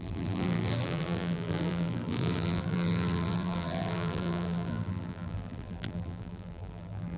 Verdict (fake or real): fake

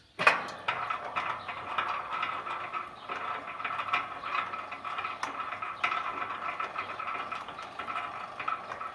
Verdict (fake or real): real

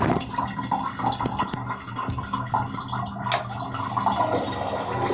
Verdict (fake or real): real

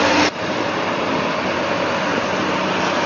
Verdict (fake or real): real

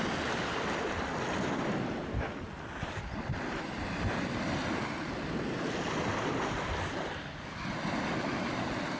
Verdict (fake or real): real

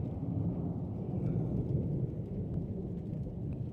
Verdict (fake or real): real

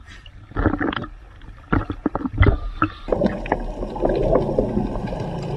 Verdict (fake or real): real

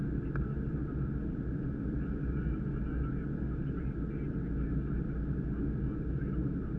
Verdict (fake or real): real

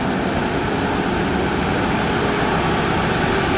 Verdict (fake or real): real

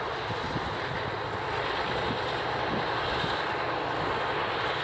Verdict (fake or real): real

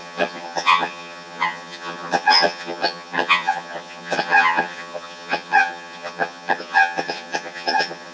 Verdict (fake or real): fake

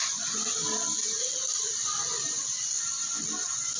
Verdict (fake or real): real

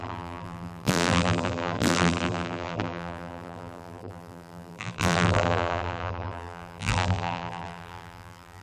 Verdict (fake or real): fake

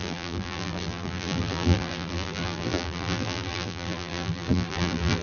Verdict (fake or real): fake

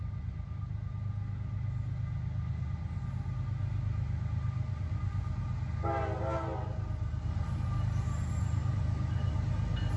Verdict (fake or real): real